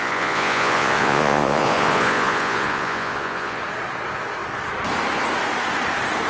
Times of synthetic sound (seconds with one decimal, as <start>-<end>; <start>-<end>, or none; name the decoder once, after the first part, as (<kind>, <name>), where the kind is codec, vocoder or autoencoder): 0.0-3.6 (vocoder, Vocos)